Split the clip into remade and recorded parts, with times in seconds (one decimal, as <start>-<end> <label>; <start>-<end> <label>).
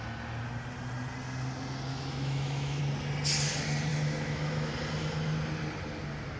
0.0-1.9 recorded; 1.9-2.8 remade; 2.8-3.9 recorded; 3.9-4.7 remade; 4.7-6.4 recorded